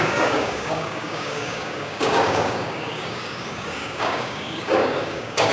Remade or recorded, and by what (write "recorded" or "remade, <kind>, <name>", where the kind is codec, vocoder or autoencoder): remade, codec, DAC